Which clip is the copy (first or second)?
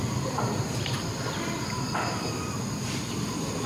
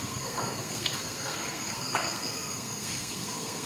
second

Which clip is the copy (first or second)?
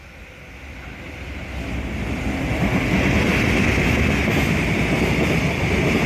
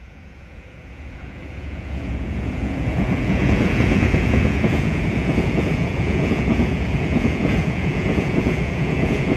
second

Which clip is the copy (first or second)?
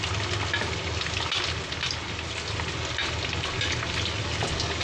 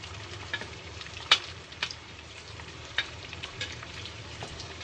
second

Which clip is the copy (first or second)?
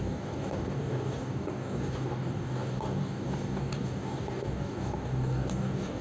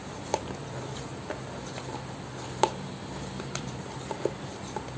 first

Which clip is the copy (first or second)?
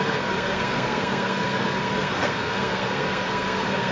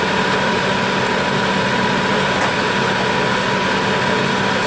first